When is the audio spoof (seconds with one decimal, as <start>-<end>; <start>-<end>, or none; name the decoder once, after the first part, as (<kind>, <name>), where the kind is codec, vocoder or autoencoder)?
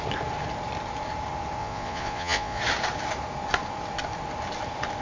1.6-2.6 (vocoder, Vocos)